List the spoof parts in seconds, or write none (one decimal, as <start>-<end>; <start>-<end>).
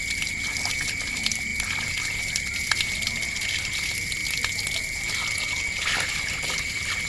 none